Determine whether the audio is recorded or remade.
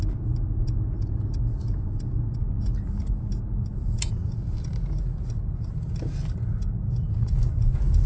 recorded